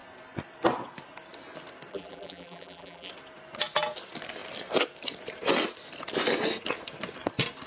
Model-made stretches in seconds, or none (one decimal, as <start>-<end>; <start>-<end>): 1.9-3.1